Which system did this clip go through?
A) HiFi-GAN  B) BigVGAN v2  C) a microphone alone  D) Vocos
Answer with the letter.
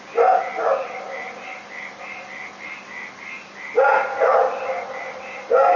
C